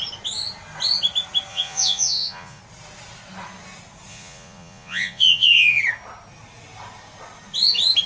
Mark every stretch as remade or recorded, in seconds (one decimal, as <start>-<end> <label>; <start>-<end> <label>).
0.0-1.5 recorded; 1.5-2.6 remade; 2.6-4.1 recorded; 4.1-5.8 remade; 5.8-8.1 recorded